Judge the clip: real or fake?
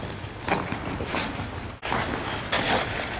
real